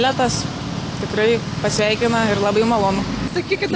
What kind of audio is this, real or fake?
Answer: real